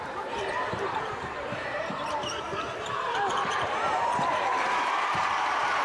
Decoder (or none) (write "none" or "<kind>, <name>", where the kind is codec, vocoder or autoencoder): vocoder, BigVGAN v2